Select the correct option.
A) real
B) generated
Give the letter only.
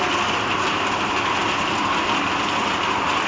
A